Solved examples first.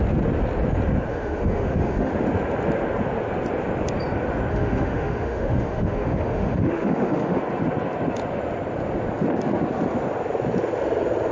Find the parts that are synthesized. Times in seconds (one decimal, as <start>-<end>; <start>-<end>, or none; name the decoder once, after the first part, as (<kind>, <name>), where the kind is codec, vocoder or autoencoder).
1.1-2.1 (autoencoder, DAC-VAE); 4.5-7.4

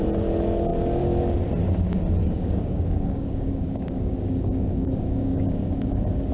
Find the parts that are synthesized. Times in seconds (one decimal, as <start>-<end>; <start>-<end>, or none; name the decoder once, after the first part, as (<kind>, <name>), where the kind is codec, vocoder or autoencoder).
2.2-6.3 (codec, DAC)

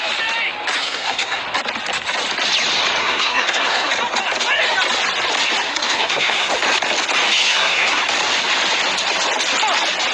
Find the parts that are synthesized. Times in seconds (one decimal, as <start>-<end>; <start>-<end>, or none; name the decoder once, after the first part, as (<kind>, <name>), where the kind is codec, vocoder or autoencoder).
0.8-1.4 (codec, SNAC); 3.0-3.9; 5.7-6.5; 7.4-8.0